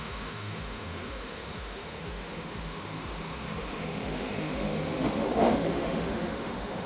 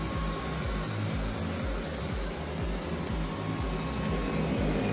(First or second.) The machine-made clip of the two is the first